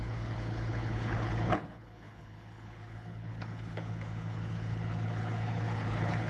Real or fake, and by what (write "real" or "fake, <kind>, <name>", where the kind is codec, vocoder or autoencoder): fake, codec, HILCodec